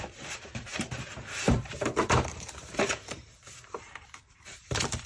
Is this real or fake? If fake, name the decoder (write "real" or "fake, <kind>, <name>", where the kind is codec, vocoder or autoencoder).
fake, vocoder, BigVGAN v2